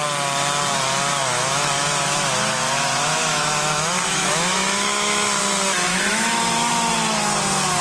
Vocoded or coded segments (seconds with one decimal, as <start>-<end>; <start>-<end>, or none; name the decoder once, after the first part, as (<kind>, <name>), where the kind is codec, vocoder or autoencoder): 1.2-5.4 (autoencoder, DAC-VAE); 5.9-6.7